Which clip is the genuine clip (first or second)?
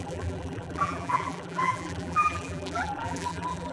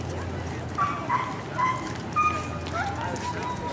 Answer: second